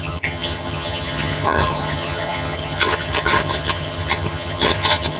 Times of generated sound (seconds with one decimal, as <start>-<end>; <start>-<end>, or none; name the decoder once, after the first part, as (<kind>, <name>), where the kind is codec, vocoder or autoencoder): 0.0-5.2 (vocoder, HiFi-GAN)